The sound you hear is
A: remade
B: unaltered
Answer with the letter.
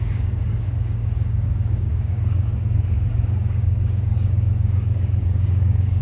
A